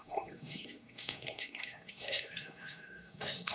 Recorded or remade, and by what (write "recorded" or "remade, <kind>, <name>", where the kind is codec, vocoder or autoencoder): remade, codec, SNAC